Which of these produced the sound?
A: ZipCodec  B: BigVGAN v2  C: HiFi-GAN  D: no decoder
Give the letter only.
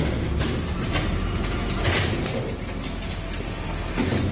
D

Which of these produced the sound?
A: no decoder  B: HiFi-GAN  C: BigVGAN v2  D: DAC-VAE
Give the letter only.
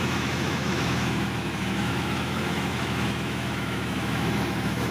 D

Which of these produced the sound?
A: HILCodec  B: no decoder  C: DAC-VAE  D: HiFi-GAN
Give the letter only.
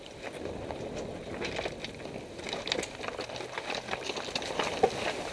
B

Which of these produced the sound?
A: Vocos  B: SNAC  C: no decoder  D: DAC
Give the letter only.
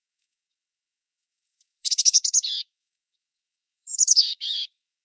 D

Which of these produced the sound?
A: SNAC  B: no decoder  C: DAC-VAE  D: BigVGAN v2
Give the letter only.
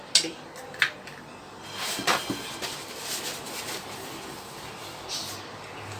B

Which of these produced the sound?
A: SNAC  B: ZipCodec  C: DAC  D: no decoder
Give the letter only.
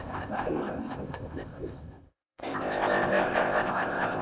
B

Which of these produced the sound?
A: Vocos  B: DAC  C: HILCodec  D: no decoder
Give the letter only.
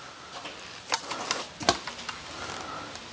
D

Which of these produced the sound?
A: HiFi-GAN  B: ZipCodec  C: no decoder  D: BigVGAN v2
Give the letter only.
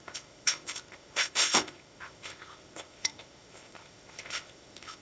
B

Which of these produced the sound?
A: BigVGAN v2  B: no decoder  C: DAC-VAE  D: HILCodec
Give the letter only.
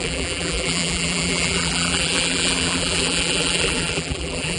A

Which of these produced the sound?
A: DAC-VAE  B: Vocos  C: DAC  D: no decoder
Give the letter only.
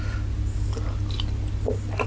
D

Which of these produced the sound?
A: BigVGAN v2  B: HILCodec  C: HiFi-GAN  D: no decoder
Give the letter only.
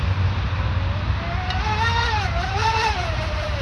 D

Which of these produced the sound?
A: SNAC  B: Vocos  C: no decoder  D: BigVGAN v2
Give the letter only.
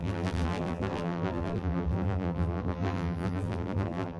D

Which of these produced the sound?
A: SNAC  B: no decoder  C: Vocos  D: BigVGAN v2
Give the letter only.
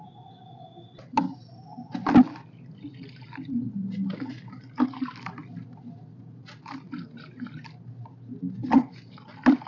B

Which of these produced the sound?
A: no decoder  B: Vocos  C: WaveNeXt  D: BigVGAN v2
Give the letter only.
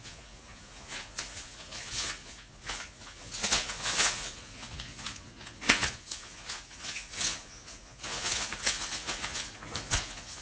B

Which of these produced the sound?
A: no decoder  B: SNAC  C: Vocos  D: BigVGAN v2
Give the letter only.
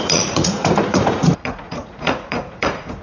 C